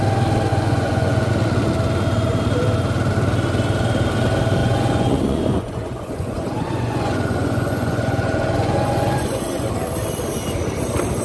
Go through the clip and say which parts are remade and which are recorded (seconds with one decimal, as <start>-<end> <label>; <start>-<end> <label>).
0.0-0.5 recorded; 0.5-1.3 remade; 1.3-4.6 recorded; 4.6-9.7 remade; 9.7-11.2 recorded